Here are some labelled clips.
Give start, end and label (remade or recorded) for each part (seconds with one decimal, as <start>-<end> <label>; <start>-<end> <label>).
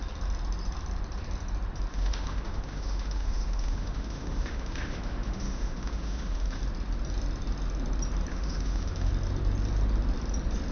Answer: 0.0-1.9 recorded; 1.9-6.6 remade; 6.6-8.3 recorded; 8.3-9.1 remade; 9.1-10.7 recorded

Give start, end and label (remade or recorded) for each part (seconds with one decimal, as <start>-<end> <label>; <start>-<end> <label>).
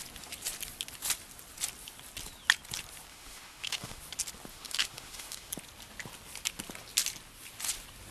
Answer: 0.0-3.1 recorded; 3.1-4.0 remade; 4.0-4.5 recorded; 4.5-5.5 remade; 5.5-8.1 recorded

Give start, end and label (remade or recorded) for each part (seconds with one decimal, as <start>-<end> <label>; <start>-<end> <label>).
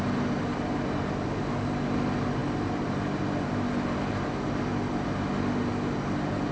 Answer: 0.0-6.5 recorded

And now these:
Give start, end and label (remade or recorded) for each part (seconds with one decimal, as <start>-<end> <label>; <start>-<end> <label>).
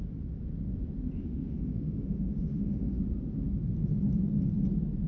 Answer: 0.0-1.2 recorded; 1.2-3.0 remade; 3.0-5.1 recorded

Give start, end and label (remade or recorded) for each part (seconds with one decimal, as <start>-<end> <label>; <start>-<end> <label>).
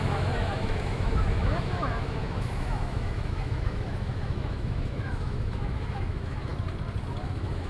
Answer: 0.0-6.5 remade; 6.5-7.2 recorded; 7.2-7.7 remade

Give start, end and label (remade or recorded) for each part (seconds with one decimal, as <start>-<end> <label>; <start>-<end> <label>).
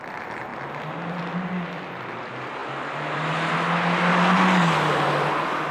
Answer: 0.0-5.7 recorded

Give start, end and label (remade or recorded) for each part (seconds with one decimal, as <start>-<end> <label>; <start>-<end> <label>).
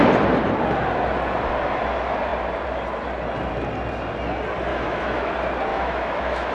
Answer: 0.0-4.7 recorded; 4.7-5.3 remade; 5.3-5.7 recorded; 5.7-6.5 remade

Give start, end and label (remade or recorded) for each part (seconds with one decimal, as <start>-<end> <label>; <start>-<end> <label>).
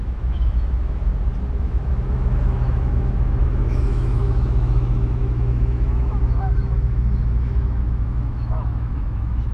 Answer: 0.0-1.1 remade; 1.1-1.6 recorded; 1.6-9.5 remade